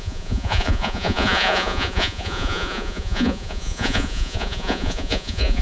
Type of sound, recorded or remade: remade